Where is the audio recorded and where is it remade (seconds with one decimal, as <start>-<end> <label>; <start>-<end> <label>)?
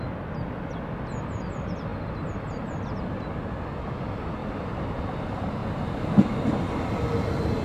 0.0-4.4 recorded; 4.4-5.0 remade; 5.0-7.6 recorded